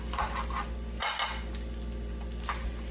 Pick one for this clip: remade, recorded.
recorded